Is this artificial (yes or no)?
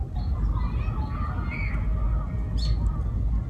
no